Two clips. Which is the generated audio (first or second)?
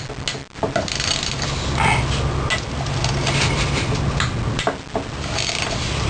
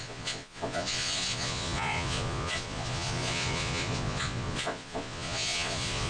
second